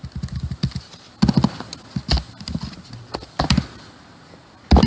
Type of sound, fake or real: real